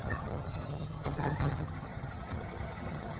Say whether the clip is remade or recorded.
remade